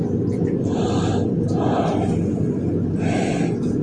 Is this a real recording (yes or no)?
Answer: yes